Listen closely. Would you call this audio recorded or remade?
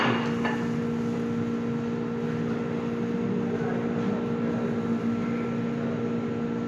recorded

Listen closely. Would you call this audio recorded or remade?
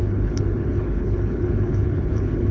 remade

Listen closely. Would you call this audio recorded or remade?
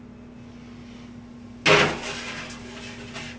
recorded